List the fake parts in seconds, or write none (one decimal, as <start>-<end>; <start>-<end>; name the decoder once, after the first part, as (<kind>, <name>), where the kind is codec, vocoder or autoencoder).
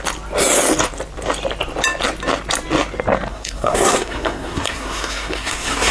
3.3-5.9 (codec, SNAC)